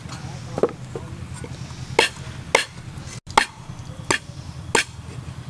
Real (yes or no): yes